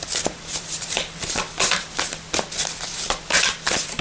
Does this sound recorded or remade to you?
remade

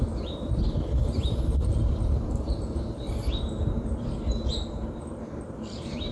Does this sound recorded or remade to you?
remade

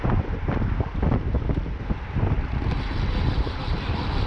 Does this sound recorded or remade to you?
remade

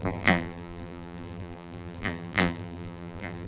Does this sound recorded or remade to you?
remade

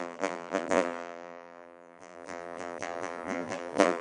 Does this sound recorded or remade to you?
remade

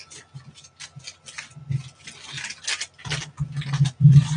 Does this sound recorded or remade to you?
recorded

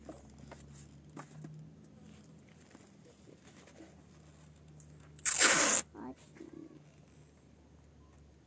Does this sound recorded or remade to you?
recorded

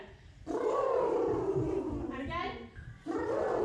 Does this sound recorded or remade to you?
recorded